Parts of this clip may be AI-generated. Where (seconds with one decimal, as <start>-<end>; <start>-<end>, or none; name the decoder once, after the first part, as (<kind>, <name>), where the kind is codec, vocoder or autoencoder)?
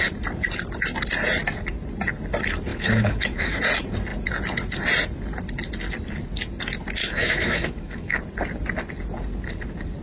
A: 2.7-3.6 (autoencoder, DAC-VAE); 7.0-8.2